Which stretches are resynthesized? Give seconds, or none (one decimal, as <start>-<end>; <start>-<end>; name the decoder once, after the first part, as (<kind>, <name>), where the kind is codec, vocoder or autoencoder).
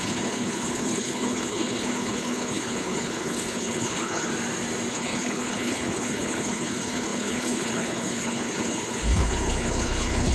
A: 0.0-4.3 (codec, HILCodec); 4.9-10.3